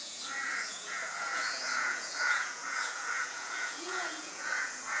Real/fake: fake